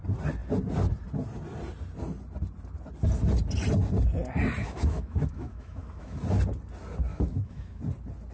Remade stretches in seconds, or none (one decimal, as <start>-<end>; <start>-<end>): 4.6-6.2; 7.1-7.8